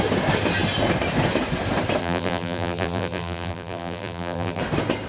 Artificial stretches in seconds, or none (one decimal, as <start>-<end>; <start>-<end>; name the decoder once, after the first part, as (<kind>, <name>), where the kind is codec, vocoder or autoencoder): 2.0-4.6 (vocoder, BigVGAN v2)